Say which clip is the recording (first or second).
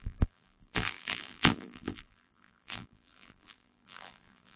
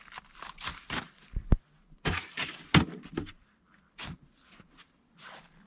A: second